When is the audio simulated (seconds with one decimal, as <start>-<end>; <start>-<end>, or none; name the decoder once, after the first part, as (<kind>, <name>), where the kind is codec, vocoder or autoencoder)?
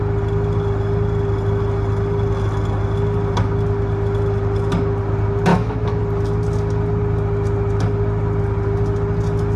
5.5-6.0 (autoencoder, DAC-VAE)